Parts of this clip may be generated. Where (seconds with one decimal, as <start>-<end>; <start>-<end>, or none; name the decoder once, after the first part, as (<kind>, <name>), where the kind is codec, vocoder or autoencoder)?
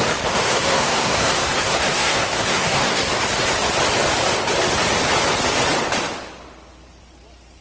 0.4-3.1 (codec, SNAC)